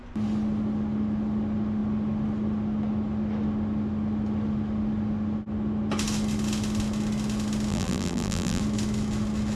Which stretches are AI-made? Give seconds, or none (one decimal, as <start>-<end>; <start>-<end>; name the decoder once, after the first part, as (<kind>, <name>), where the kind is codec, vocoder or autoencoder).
7.7-8.6 (vocoder, BigVGAN v2)